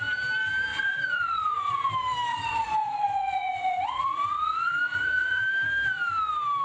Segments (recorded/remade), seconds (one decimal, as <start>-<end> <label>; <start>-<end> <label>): 0.0-0.7 recorded; 0.7-1.9 remade; 1.9-2.3 recorded; 2.3-5.4 remade; 5.4-6.6 recorded